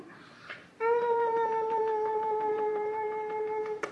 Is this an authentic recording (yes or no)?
no